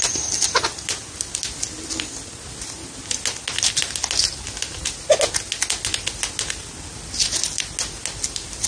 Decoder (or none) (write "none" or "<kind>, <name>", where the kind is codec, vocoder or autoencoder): none